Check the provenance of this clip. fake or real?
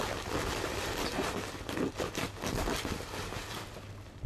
fake